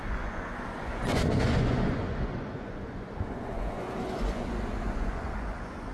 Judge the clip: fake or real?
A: fake